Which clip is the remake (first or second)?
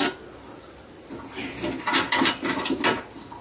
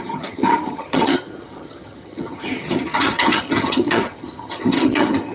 second